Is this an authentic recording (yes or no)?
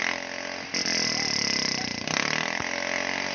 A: yes